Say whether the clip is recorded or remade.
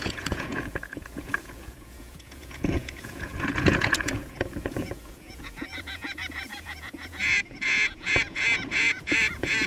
remade